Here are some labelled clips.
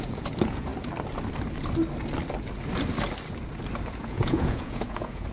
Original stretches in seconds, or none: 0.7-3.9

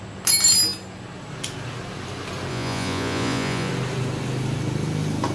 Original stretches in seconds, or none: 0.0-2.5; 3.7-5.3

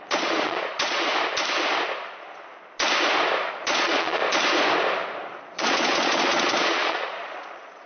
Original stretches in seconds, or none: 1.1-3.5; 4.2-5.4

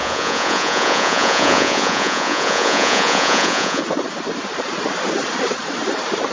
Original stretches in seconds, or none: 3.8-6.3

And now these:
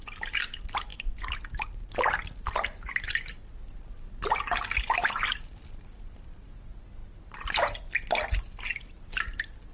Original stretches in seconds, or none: 0.0-9.7

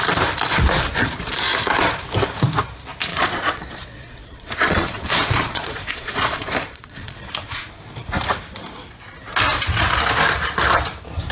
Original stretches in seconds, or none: 0.0-3.1; 7.7-11.3

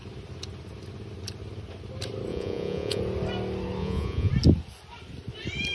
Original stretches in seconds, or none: 0.0-2.3; 3.0-3.8; 4.3-5.7